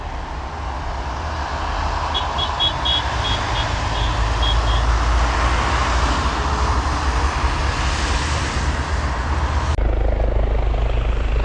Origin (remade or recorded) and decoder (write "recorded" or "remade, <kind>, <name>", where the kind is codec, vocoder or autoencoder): recorded